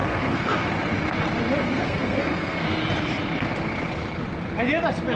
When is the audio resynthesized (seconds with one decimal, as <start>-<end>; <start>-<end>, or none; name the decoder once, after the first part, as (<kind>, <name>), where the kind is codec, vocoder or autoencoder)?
0.0-0.7 (codec, SNAC); 1.6-2.8